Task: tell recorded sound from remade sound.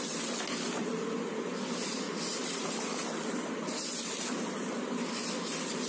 remade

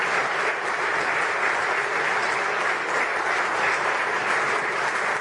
recorded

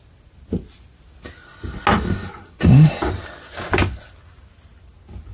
recorded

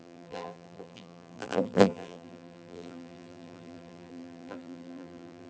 remade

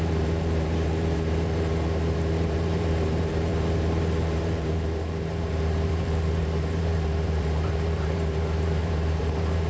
remade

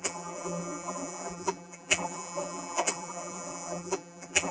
remade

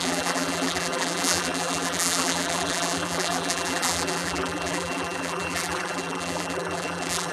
remade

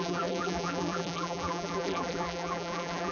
remade